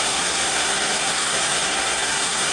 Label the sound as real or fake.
fake